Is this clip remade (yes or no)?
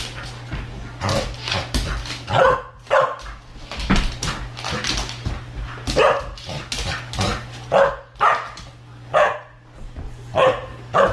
no